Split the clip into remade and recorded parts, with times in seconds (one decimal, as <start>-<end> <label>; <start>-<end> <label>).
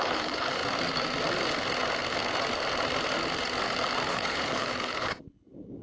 0.0-0.6 remade; 0.6-4.1 recorded; 4.1-5.8 remade